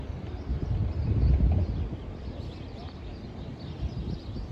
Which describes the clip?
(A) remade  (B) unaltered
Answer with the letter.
B